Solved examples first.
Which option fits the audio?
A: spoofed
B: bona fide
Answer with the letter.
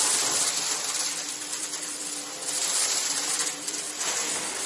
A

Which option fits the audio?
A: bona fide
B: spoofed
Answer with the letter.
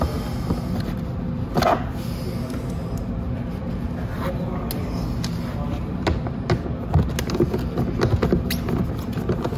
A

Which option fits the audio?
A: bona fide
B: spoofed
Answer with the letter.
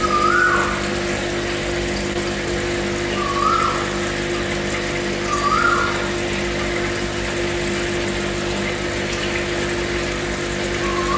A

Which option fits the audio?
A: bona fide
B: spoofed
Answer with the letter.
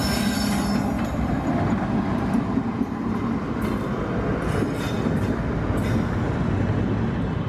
A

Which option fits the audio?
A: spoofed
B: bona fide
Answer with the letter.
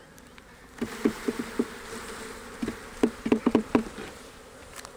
A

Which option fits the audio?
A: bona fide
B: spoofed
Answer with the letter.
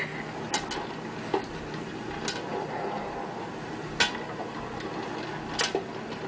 A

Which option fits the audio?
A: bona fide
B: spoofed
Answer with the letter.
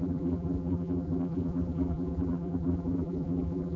B